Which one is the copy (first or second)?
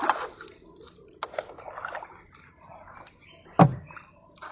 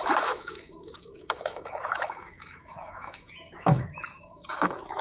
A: second